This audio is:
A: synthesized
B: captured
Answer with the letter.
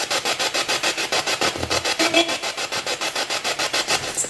A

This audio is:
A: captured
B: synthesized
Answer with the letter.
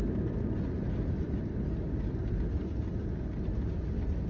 A